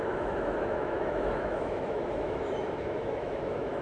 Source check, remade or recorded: remade